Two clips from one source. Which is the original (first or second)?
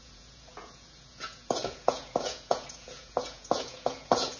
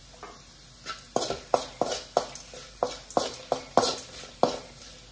second